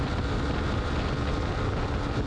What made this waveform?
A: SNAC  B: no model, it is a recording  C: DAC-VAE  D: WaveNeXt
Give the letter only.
B